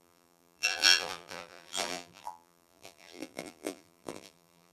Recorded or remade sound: remade